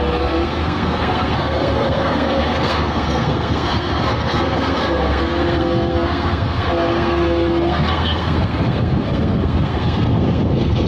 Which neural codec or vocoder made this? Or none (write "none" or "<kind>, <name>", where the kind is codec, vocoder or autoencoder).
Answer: codec, SNAC